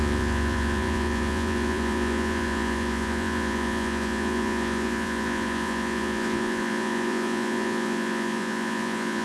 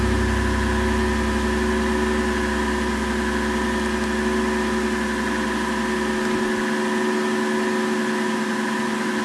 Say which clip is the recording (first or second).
second